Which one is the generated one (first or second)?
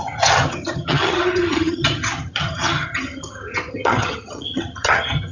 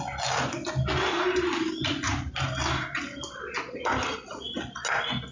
first